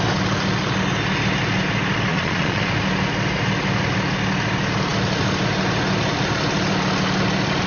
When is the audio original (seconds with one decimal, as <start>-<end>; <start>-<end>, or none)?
0.0-2.1; 2.7-7.7